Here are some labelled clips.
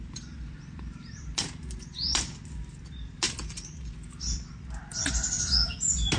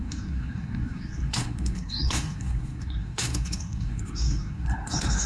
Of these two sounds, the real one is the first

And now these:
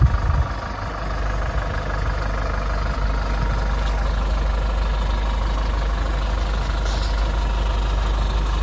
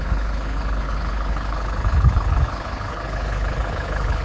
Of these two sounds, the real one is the first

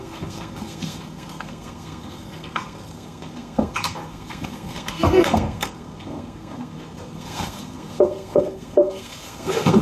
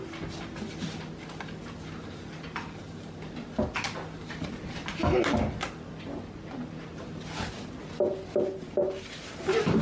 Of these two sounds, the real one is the second